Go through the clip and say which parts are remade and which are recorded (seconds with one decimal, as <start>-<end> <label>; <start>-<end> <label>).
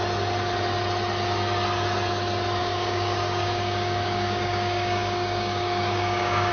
0.0-2.6 recorded; 2.6-6.5 remade